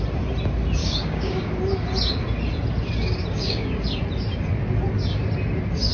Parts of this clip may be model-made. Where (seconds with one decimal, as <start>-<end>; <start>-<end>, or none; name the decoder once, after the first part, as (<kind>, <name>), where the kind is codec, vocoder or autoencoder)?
0.8-1.5 (codec, DAC); 3.3-3.8